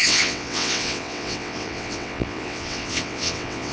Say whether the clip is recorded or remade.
remade